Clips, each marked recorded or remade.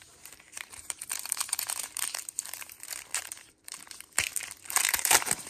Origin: remade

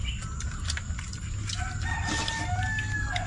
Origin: recorded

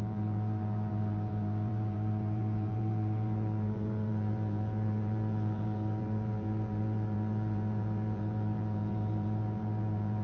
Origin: remade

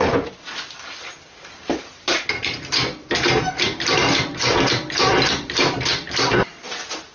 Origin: remade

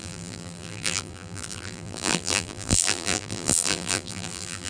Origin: remade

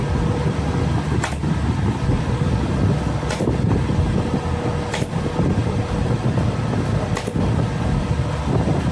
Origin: recorded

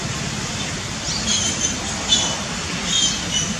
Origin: recorded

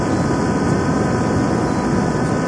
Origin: recorded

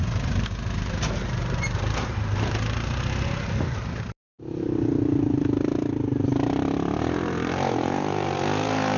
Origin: remade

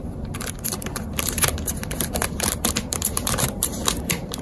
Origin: remade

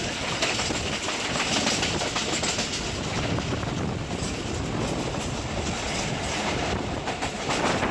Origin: recorded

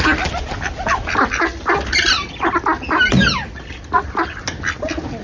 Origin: recorded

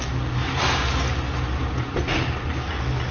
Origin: recorded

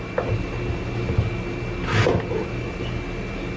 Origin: recorded